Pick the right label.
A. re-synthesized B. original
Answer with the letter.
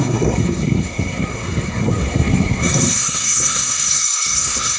A